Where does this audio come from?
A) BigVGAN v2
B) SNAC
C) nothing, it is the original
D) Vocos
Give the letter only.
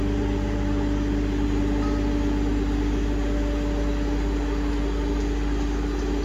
C